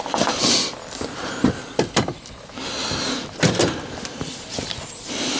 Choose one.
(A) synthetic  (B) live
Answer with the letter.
B